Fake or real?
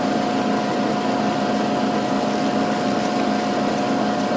real